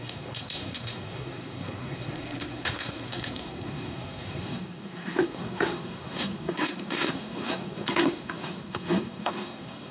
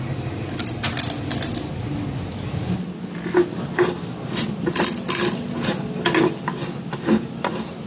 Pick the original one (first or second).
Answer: second